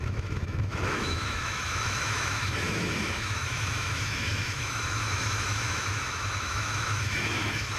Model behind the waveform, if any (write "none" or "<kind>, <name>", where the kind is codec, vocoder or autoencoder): autoencoder, DAC-VAE